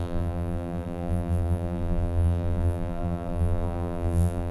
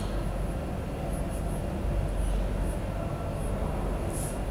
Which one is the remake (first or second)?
first